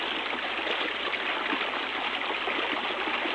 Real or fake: real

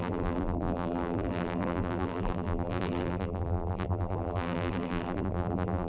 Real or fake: fake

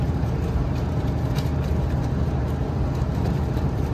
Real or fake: fake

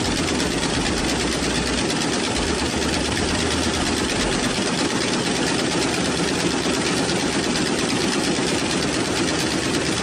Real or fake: fake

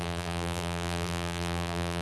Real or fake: fake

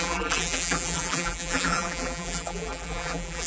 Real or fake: fake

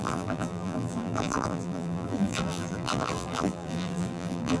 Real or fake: fake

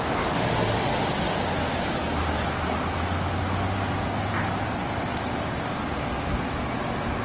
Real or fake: real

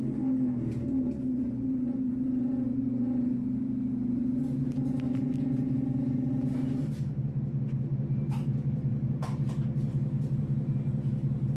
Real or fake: fake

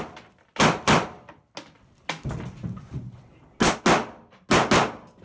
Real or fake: real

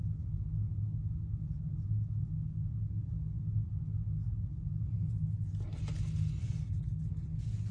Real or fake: real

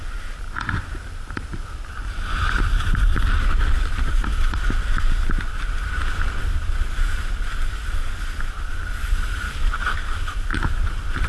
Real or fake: real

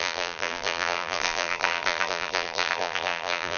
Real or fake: fake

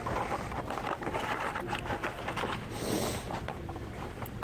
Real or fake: real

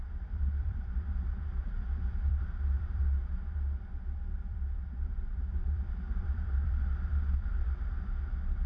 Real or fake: fake